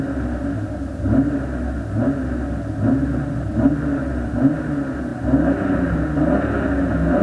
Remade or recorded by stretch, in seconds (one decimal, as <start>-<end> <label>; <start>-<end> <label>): 0.0-7.2 recorded

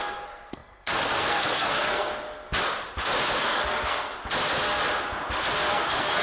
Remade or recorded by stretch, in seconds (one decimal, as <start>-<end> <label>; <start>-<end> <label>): 0.0-2.1 remade; 2.1-3.4 recorded; 3.4-4.1 remade; 4.1-5.7 recorded; 5.7-6.2 remade

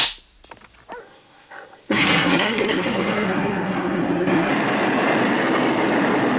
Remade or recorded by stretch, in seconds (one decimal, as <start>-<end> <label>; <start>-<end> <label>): 0.0-1.0 recorded; 1.0-4.5 remade; 4.5-6.4 recorded

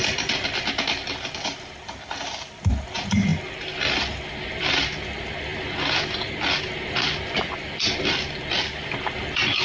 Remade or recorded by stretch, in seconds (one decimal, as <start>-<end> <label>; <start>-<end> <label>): 0.0-9.6 recorded

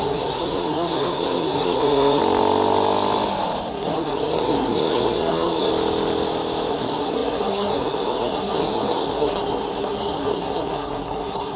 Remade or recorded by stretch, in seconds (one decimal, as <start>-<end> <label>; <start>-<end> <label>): 0.0-2.2 remade; 2.2-3.7 recorded; 3.7-5.7 remade; 5.7-6.7 recorded; 6.7-11.6 remade

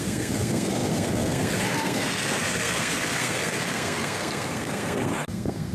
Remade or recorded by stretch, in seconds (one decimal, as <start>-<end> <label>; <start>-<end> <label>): 0.0-5.7 remade

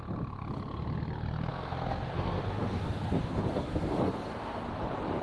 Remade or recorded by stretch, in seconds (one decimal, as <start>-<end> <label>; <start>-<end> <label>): 0.0-1.5 recorded; 1.5-4.6 remade; 4.6-5.2 recorded